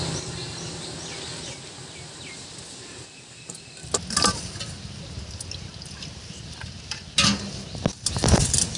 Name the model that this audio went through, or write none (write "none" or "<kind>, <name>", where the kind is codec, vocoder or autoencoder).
none